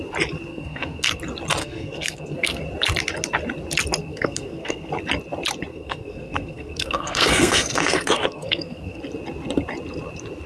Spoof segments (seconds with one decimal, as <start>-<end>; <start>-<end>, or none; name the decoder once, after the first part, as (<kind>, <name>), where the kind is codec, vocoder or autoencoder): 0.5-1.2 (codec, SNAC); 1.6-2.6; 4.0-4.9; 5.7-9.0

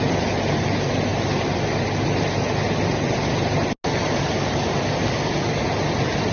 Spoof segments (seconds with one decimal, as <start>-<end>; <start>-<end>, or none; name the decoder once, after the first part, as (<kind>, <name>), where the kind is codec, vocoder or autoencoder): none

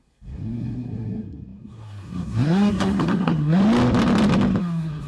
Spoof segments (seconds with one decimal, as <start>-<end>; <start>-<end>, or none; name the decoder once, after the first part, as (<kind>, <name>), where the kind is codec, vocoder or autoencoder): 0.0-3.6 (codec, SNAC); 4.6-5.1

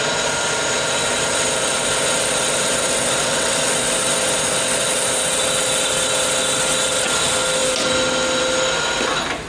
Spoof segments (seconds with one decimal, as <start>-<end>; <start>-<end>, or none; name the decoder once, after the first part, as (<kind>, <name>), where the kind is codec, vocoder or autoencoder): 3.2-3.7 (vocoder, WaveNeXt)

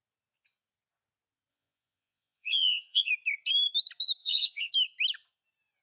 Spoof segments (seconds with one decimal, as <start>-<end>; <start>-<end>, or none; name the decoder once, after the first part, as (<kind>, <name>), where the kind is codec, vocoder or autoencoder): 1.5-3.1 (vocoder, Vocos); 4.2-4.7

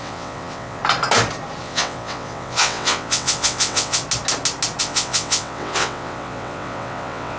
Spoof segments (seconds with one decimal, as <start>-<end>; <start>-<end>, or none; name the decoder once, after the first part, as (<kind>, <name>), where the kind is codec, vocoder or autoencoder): 0.0-0.8 (vocoder, WaveNeXt); 1.6-4.0; 4.8-7.4